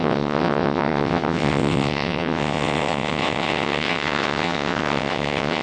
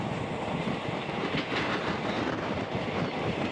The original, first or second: second